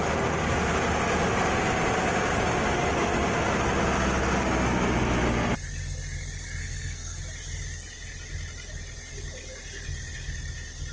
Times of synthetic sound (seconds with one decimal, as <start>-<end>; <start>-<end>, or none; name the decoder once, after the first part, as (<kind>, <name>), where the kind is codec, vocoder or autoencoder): 6.6-7.2 (codec, SNAC)